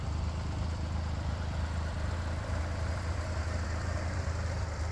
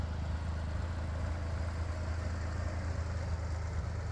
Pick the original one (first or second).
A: second